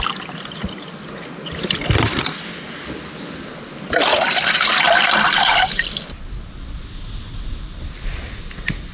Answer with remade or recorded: recorded